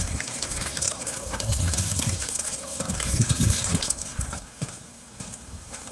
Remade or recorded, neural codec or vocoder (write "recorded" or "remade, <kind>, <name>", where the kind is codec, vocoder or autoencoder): remade, codec, SNAC